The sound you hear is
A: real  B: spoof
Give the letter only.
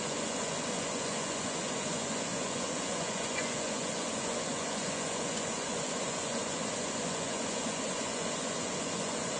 B